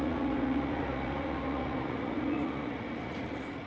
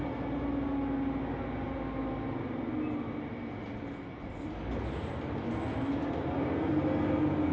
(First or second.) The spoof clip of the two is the first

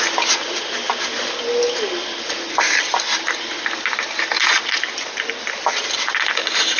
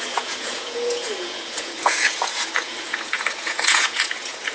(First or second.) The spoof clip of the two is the second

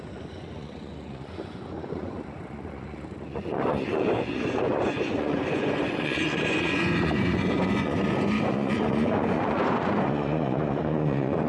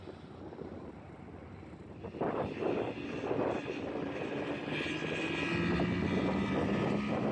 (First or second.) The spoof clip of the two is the first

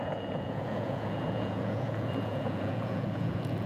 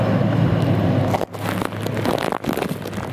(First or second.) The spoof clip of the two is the first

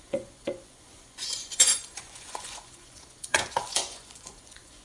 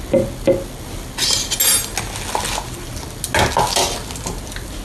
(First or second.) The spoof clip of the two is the first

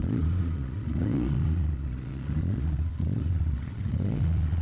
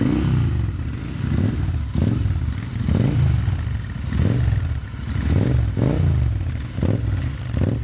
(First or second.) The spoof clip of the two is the first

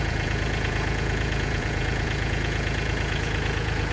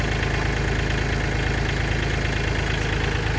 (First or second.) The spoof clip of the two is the first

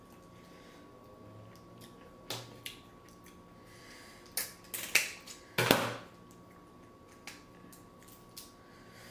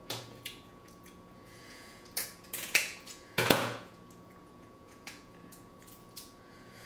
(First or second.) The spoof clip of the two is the second